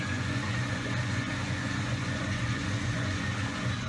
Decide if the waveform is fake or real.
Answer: fake